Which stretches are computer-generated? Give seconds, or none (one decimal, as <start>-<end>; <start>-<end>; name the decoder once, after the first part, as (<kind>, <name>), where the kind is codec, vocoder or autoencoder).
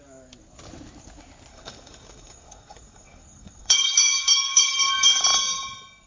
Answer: 1.5-5.2 (codec, DAC)